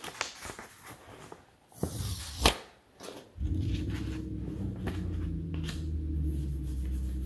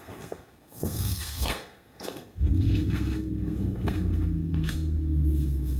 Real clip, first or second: first